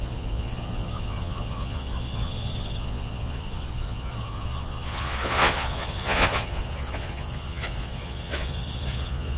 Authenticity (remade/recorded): remade